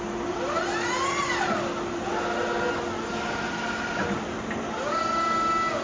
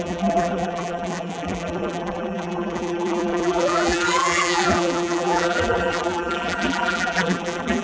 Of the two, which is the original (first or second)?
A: first